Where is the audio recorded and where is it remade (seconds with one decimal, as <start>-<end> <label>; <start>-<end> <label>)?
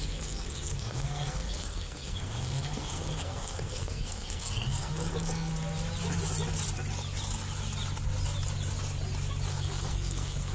0.0-5.5 remade; 5.5-9.5 recorded; 9.5-10.5 remade